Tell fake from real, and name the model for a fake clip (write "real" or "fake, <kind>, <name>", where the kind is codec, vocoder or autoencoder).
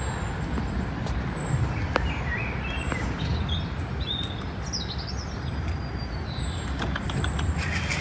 real